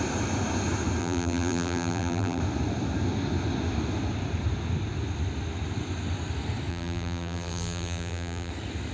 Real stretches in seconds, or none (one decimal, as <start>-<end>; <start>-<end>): 0.0-1.0; 2.4-6.7; 8.5-8.9